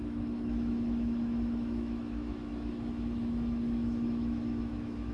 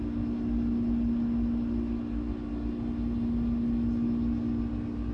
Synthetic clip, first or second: first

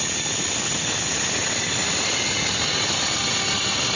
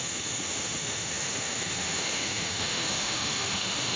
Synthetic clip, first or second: second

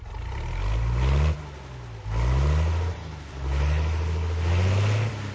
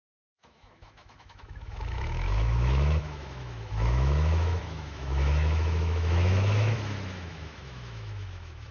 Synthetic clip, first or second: second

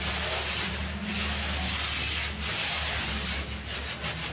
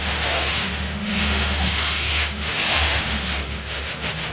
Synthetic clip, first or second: second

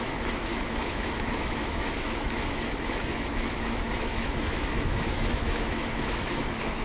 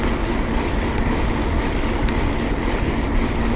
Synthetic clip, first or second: first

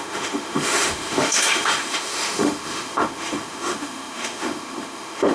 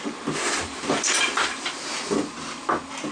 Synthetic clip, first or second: first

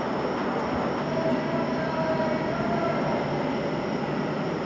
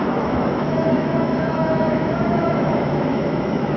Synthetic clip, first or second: second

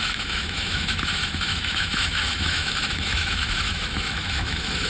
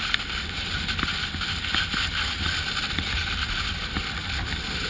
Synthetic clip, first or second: first